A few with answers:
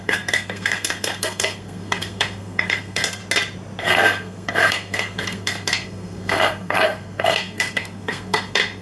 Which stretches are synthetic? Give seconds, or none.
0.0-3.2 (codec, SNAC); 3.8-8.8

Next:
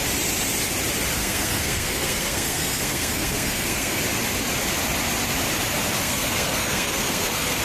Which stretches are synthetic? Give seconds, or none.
1.2-4.0 (codec, SNAC); 6.0-7.6